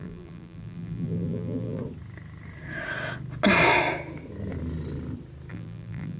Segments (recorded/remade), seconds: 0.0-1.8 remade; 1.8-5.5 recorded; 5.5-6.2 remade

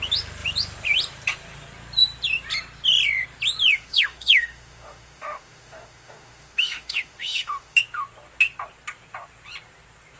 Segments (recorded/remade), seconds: 0.0-3.7 recorded; 3.7-7.8 remade; 7.8-10.2 recorded

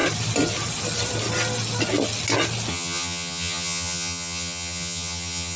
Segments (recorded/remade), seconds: 0.0-2.7 recorded; 2.7-5.6 remade

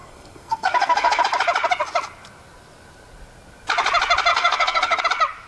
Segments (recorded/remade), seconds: 0.0-1.2 remade; 1.2-4.3 recorded; 4.3-5.0 remade; 5.0-5.5 recorded

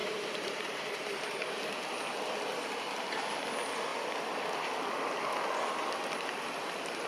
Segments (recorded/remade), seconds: 0.0-1.4 remade; 1.4-7.1 recorded

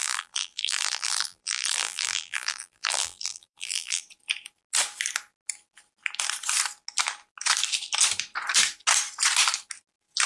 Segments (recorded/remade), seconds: 0.0-4.0 remade; 4.0-10.3 recorded